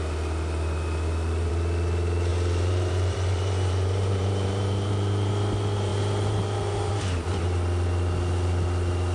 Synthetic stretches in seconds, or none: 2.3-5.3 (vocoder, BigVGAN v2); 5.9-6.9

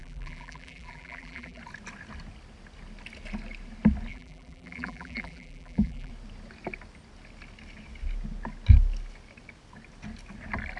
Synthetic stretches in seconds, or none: 0.0-1.6 (vocoder, BigVGAN v2); 4.1-6.1

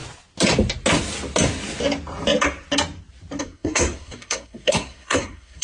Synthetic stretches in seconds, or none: 3.4-5.6 (codec, SNAC)